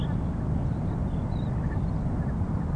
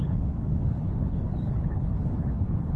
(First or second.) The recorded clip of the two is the first